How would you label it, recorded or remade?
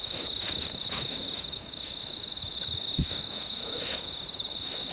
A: remade